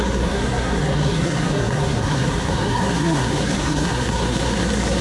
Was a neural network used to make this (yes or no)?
yes